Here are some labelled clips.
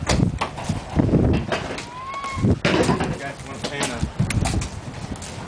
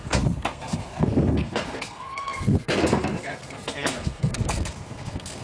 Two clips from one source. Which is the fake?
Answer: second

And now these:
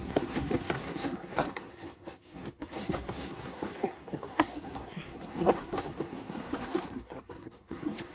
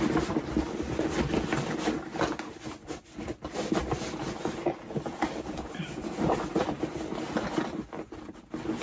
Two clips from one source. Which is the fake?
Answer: first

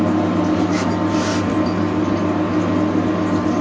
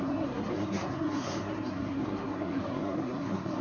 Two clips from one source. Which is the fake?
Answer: second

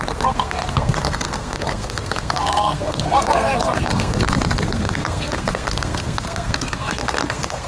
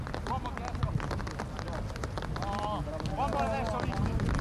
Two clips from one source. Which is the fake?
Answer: first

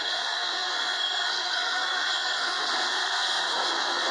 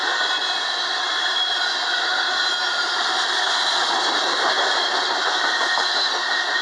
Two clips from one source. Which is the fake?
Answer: first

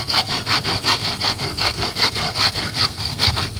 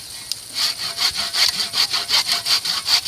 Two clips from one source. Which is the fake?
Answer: first